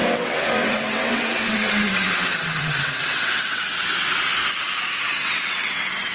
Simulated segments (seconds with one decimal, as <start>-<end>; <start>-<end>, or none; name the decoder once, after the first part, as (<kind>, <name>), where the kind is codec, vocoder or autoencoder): 0.0-4.3 (vocoder, WaveNeXt); 5.0-6.1

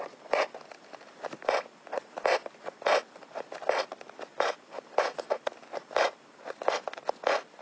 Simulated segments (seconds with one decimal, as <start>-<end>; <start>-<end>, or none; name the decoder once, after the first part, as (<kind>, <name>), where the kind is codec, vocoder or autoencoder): none

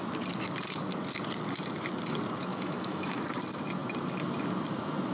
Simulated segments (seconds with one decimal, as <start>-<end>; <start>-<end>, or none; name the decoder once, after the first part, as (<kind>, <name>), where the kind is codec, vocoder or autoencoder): 2.5-3.2 (autoencoder, DAC-VAE)

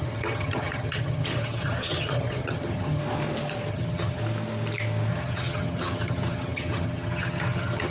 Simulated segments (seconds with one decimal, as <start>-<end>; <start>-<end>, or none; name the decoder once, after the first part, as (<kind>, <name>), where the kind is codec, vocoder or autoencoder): 0.0-3.0 (vocoder, HiFi-GAN); 3.7-4.2; 5.1-7.9

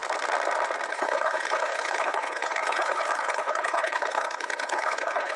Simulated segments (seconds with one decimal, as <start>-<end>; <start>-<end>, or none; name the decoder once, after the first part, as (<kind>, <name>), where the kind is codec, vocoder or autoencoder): 0.9-5.4 (codec, HILCodec)